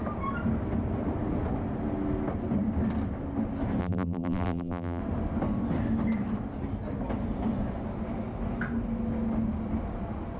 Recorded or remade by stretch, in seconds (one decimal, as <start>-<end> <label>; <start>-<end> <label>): 0.0-3.8 recorded; 3.8-5.0 remade; 5.0-10.4 recorded